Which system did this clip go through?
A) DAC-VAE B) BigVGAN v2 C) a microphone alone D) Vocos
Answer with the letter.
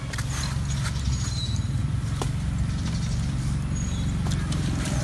C